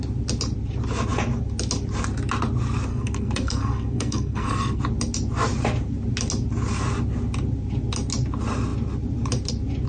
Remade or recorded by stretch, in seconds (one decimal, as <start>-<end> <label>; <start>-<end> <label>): 0.0-2.9 recorded; 2.9-4.8 remade; 4.8-9.9 recorded

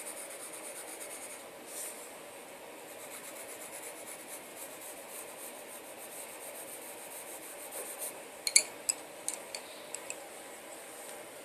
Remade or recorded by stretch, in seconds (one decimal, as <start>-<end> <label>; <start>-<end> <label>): 0.0-4.5 recorded; 4.5-5.3 remade; 5.3-11.4 recorded

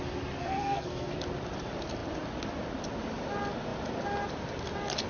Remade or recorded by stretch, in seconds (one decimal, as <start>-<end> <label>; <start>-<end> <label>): 0.0-0.4 recorded; 0.4-1.1 remade; 1.1-5.1 recorded

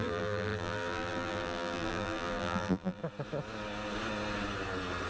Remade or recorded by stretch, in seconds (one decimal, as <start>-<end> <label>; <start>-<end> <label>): 0.0-3.0 remade; 3.0-5.1 recorded